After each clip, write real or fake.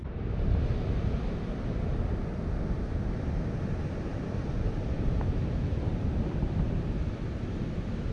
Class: real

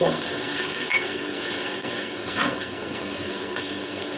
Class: fake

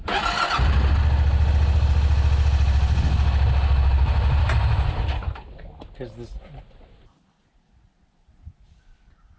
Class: real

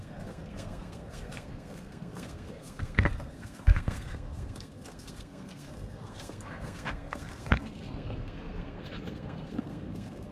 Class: fake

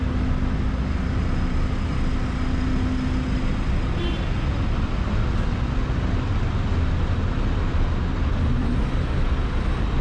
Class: real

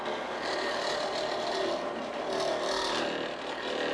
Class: real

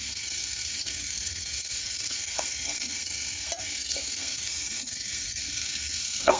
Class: fake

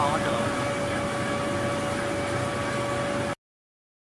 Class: real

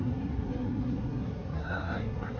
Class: fake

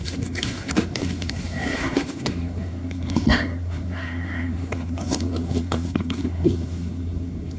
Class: fake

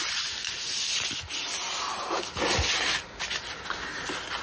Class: real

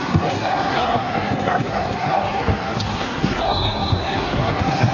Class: fake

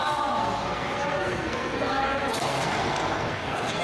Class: fake